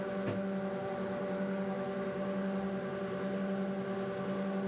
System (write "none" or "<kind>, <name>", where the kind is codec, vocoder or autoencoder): none